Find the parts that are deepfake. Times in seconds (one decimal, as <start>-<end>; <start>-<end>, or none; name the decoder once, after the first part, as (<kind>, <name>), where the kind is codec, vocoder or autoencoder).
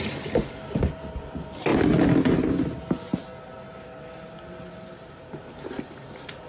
0.0-1.7 (vocoder, BigVGAN v2); 4.7-6.5